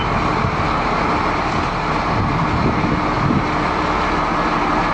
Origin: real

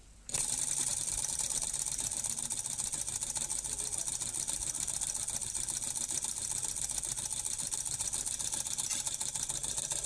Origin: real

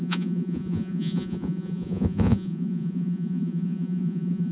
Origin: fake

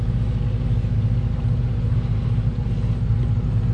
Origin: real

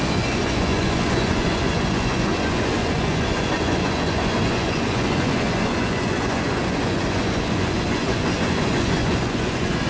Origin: fake